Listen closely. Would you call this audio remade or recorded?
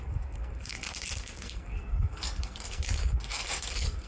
remade